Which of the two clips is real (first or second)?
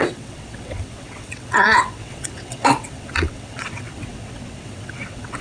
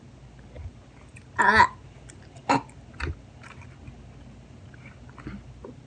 second